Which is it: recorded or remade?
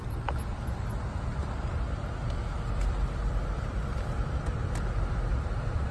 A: recorded